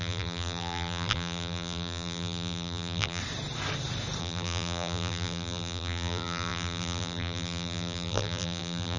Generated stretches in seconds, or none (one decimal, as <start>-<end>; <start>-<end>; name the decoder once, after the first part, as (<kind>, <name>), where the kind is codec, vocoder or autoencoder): 0.0-3.2 (vocoder, BigVGAN v2); 4.2-9.0